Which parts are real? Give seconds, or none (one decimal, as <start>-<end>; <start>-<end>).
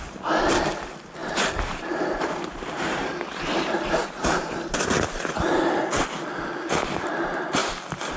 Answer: 0.0-1.2; 5.9-8.2